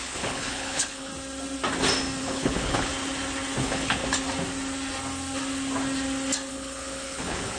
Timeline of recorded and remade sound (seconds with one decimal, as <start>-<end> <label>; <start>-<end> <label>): 0.0-1.1 remade; 1.1-2.2 recorded; 2.2-2.9 remade; 2.9-3.6 recorded; 3.6-4.0 remade; 4.0-6.5 recorded; 6.5-7.6 remade